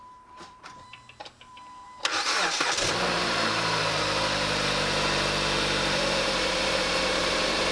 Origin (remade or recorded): remade